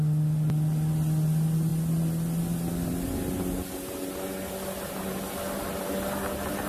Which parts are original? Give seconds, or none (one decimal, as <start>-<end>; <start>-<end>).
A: 0.0-6.7